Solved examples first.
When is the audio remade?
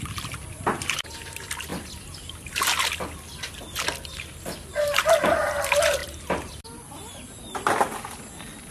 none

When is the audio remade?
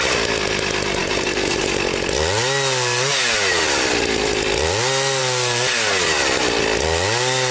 1.0-1.6 (vocoder, BigVGAN v2)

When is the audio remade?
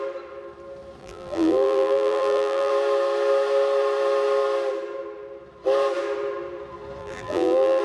1.0-2.7 (vocoder, BigVGAN v2); 7.0-7.8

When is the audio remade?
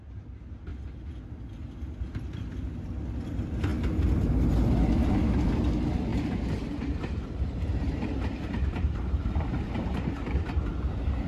6.1-10.6 (vocoder, BigVGAN v2)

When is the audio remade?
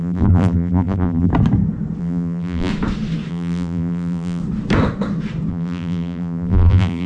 0.0-1.3 (vocoder, BigVGAN v2); 2.0-2.7; 3.3-4.4; 5.5-7.1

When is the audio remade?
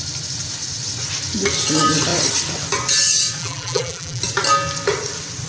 3.4-4.2 (vocoder, BigVGAN v2)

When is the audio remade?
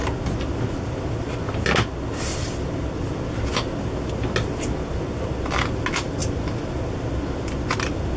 0.0-1.0 (vocoder, BigVGAN v2); 2.3-3.2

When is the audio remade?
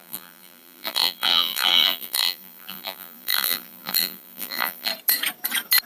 0.0-4.9 (vocoder, BigVGAN v2)